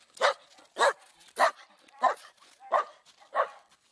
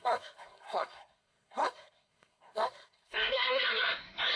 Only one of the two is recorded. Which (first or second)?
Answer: first